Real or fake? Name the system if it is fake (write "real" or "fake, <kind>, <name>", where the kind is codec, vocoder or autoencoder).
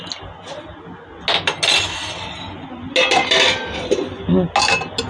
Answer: real